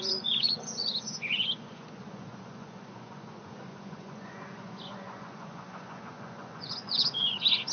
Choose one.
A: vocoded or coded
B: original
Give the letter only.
A